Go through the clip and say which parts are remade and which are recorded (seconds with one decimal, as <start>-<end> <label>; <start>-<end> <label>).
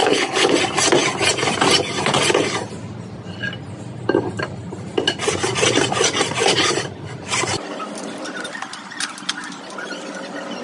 0.0-0.5 remade; 0.5-10.6 recorded